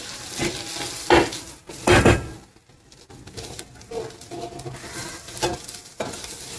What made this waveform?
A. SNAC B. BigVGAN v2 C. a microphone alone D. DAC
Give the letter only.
C